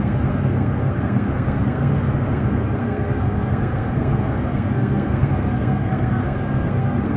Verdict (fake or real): fake